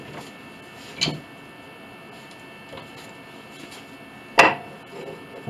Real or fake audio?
real